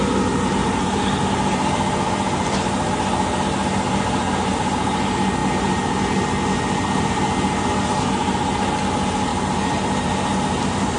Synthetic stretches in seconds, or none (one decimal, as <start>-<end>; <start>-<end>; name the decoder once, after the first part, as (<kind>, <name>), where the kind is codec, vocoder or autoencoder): none